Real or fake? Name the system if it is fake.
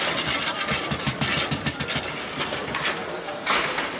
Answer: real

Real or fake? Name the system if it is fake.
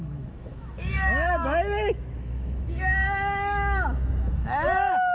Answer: fake, autoencoder, DAC-VAE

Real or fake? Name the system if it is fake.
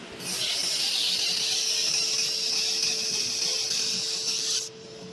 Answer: real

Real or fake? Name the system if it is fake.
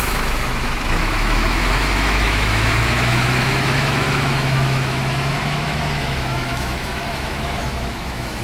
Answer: fake, autoencoder, DAC-VAE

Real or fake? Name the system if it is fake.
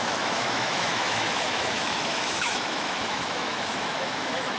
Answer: fake, autoencoder, DAC-VAE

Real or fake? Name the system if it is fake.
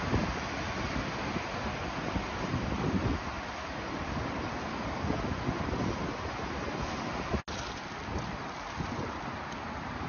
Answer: real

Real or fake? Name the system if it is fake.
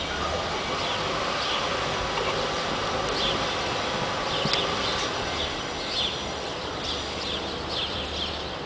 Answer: real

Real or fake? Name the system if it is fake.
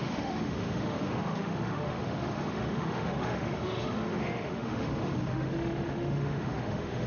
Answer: fake, autoencoder, DAC-VAE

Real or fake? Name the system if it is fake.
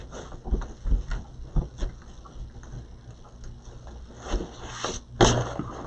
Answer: real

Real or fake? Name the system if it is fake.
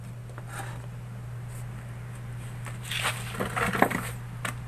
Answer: real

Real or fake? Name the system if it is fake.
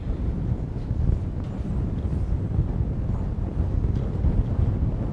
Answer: real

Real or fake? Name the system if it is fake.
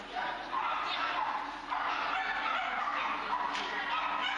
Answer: real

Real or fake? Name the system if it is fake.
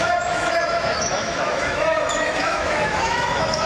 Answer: fake, autoencoder, DAC-VAE